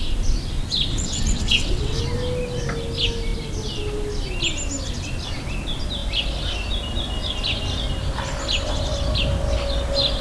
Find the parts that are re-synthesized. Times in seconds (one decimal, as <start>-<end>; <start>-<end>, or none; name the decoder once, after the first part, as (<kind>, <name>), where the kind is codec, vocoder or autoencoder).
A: 0.9-2.0 (vocoder, WaveNeXt)